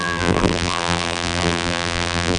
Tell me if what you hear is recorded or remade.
remade